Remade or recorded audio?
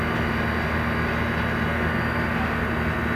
recorded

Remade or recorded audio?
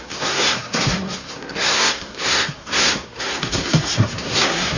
remade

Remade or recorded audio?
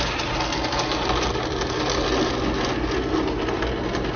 recorded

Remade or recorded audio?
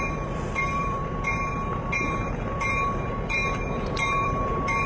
remade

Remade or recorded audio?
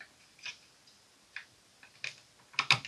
recorded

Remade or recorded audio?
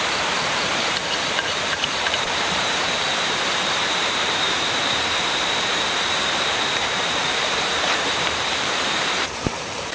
remade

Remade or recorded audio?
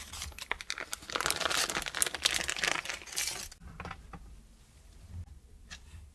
recorded